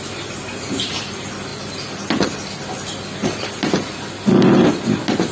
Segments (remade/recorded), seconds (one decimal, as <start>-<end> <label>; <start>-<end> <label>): 0.0-5.3 recorded